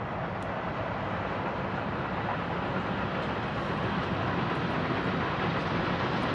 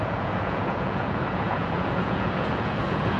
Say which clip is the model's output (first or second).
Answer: second